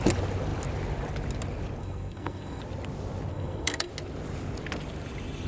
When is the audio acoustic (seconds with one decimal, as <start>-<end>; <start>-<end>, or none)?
0.0-1.8; 2.6-3.3; 3.9-5.5